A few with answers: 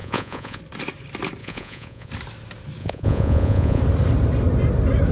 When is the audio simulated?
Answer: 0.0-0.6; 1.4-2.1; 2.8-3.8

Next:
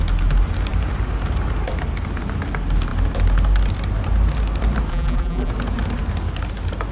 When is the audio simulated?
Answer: 4.9-5.5

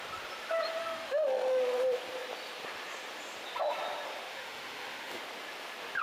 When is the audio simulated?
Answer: 0.8-1.6; 4.3-5.2

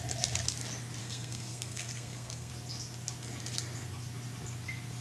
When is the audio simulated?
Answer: 1.0-2.5

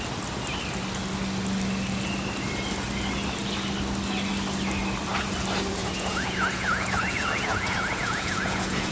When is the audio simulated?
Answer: 5.8-8.9

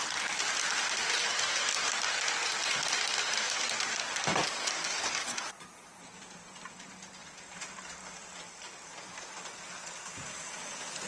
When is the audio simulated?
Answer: 5.2-6.0